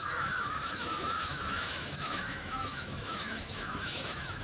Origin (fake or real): fake